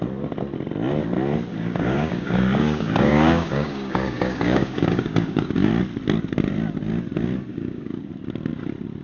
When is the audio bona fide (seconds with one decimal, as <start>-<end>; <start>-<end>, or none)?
0.0-1.5; 5.7-7.5; 8.1-9.0